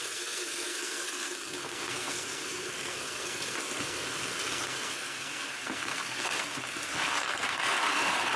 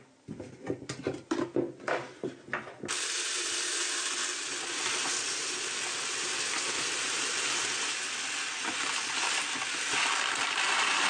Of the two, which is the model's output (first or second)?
first